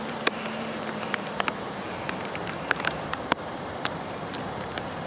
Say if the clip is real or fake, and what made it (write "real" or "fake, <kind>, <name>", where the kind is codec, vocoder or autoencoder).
fake, vocoder, BigVGAN v2